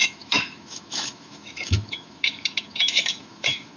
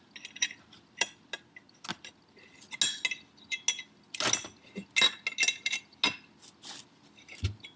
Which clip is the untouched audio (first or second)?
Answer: second